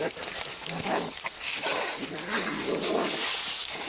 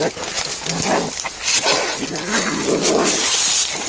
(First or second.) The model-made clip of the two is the first